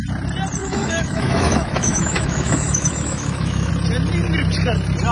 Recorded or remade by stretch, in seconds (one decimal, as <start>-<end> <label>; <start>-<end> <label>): 0.0-0.6 recorded; 0.6-3.7 remade; 3.7-5.1 recorded